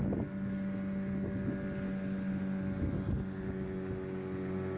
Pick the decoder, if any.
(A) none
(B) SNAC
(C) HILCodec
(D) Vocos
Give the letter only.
A